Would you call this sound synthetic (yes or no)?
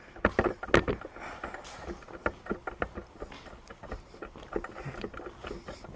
no